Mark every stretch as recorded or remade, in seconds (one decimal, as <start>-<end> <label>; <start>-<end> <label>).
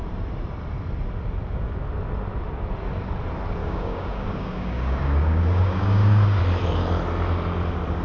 0.0-3.6 recorded; 3.6-6.4 remade; 6.4-8.0 recorded